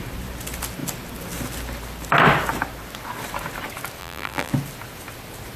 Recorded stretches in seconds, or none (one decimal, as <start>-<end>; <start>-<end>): 0.0-4.0; 4.5-5.6

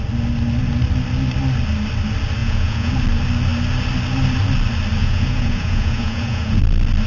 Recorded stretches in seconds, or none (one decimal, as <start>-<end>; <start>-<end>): 0.0-2.4; 2.9-5.0; 6.6-7.1

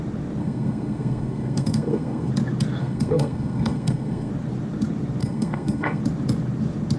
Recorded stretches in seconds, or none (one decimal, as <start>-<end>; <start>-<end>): 0.0-0.4; 2.3-2.8; 4.3-5.2; 6.0-7.0